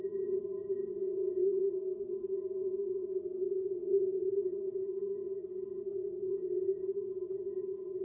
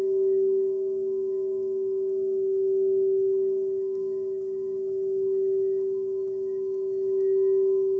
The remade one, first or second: first